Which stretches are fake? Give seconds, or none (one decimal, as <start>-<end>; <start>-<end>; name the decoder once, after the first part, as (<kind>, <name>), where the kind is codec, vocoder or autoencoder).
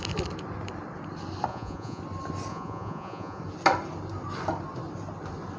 1.5-2.0 (vocoder, Vocos); 2.5-3.4